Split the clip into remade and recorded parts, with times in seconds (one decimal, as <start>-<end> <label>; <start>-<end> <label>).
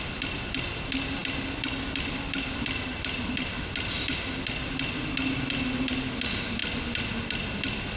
0.0-8.0 recorded